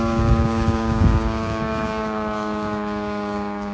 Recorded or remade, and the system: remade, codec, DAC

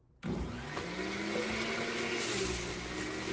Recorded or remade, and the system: recorded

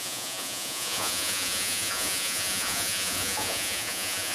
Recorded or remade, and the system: remade, vocoder, Vocos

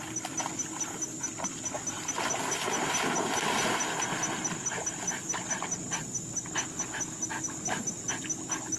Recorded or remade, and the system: recorded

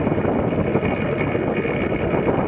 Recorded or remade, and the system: recorded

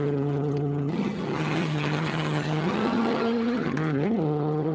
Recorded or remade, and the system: remade, vocoder, HiFi-GAN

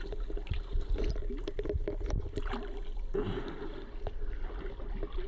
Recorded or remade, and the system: recorded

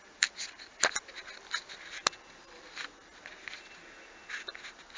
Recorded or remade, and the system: recorded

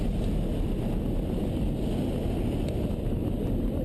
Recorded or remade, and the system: recorded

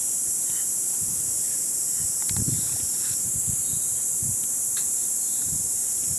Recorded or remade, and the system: remade, vocoder, BigVGAN v2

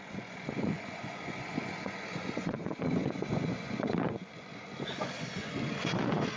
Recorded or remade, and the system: remade, vocoder, Vocos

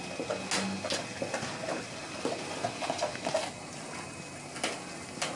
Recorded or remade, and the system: recorded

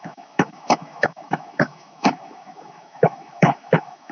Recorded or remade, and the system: remade, autoencoder, DAC-VAE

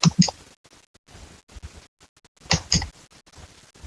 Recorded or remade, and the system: recorded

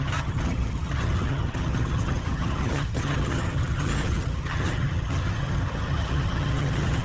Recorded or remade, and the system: remade, vocoder, HiFi-GAN